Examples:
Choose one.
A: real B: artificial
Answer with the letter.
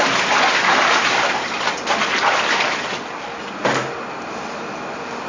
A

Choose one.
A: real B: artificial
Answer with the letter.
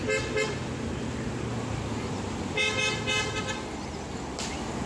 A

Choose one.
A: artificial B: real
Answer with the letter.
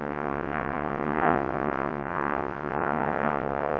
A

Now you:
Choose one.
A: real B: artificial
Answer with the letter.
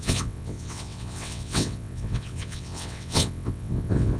B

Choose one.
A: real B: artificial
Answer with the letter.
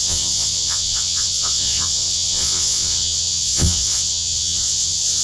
B